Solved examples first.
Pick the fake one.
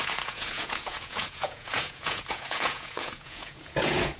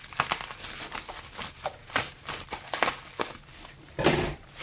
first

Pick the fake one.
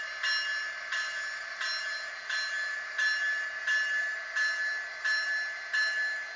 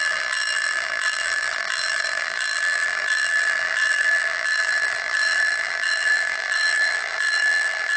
second